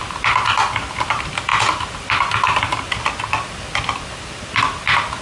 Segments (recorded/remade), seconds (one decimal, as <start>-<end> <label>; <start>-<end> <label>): 0.0-5.2 recorded